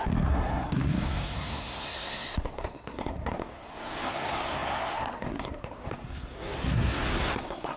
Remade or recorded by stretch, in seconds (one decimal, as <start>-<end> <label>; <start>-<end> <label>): 0.0-7.8 remade